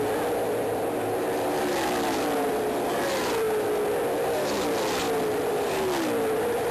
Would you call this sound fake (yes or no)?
no